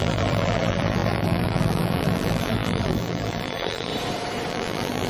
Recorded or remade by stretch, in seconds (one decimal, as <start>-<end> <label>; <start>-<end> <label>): 0.0-3.9 remade; 3.9-4.5 recorded; 4.5-5.1 remade